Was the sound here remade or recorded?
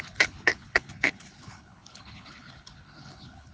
remade